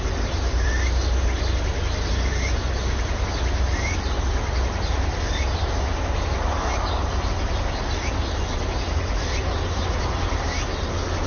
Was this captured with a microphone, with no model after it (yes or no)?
yes